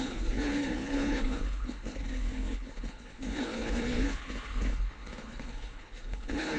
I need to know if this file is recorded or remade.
remade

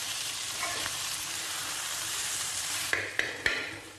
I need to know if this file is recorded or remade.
remade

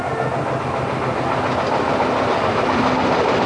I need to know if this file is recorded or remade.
recorded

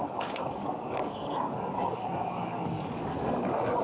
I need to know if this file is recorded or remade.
remade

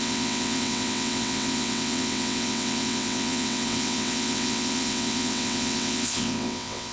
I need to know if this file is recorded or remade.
remade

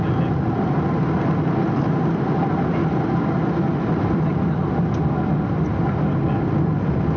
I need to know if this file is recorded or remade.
recorded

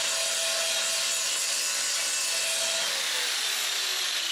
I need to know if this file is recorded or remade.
recorded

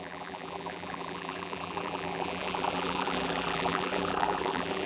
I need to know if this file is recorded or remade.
remade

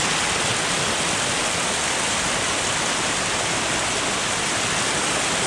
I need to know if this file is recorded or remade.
recorded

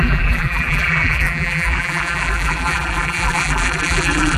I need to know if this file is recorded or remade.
remade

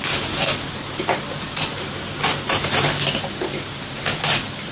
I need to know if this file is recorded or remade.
recorded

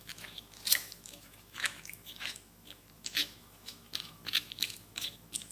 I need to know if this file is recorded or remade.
remade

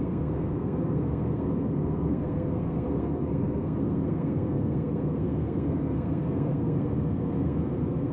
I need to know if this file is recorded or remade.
remade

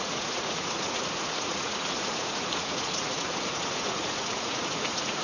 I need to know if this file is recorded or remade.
remade